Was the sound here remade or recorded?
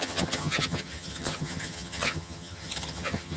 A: remade